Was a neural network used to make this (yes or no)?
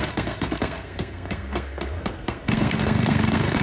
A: yes